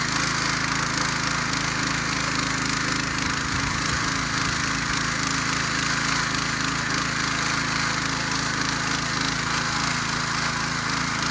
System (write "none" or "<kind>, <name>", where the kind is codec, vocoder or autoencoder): none